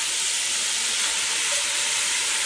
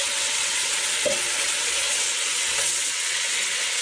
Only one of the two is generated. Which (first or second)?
second